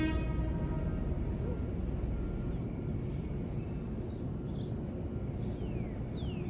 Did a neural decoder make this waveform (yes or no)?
no